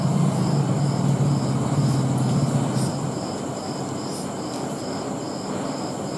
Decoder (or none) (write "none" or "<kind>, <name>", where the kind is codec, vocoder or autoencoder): none